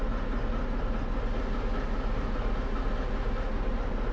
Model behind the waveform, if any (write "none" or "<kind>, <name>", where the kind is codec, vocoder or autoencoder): none